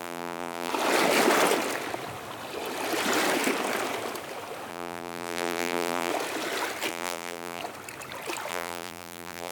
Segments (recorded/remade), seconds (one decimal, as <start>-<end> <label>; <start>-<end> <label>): 0.0-0.7 remade; 0.7-4.7 recorded; 4.7-6.1 remade; 6.1-6.9 recorded; 6.9-7.6 remade; 7.6-8.5 recorded; 8.5-9.5 remade